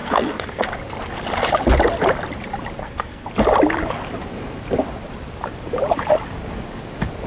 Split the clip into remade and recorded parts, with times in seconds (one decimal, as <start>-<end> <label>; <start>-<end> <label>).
0.0-0.7 remade; 0.7-2.8 recorded; 2.8-3.3 remade; 3.3-7.3 recorded